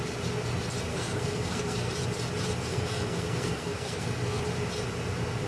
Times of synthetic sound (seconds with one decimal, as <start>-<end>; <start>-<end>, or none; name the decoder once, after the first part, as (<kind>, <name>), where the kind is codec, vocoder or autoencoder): 0.9-1.9 (codec, SNAC); 2.7-4.4